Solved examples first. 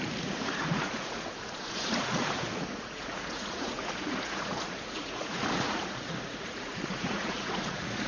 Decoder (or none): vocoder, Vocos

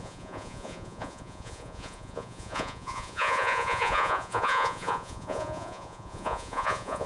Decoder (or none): vocoder, Vocos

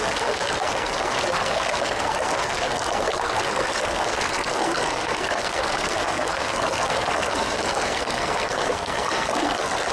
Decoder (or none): codec, SNAC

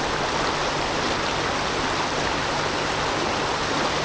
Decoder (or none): none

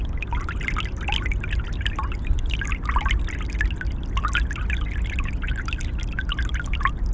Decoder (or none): none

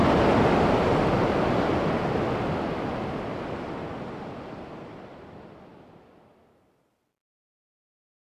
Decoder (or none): none